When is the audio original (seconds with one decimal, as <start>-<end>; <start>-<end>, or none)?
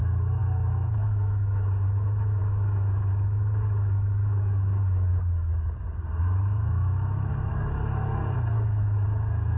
5.1-6.2